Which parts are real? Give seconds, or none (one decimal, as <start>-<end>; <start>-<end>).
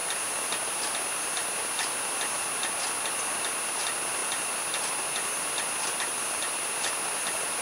0.0-7.6